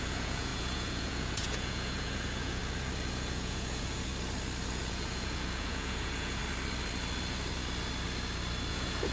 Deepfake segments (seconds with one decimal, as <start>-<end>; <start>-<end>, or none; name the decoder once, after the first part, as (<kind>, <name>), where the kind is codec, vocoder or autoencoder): 0.0-2.6 (vocoder, Vocos); 3.1-4.1; 4.7-6.4; 8.7-9.1

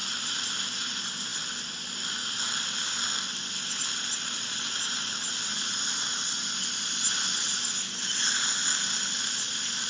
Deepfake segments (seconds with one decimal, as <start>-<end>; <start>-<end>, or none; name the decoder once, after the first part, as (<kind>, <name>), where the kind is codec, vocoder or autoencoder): none